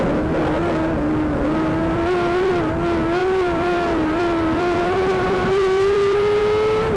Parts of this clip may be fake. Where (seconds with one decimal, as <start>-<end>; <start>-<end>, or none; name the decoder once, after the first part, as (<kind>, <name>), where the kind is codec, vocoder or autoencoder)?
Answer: 1.8-2.5 (vocoder, BigVGAN v2); 3.2-6.4